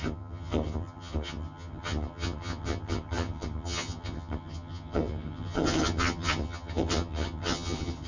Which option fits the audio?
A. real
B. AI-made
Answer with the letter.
B